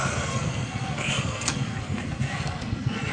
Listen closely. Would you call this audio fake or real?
fake